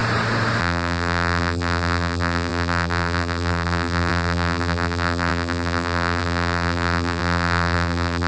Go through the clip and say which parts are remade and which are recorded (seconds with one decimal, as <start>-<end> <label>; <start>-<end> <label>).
0.0-0.6 recorded; 0.6-8.3 remade